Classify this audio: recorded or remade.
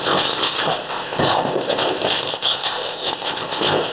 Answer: remade